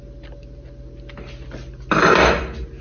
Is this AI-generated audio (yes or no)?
no